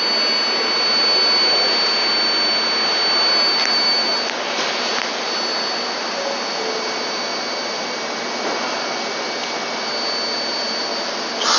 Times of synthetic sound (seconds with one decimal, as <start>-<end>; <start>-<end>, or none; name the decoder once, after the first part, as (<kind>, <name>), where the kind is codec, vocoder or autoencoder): none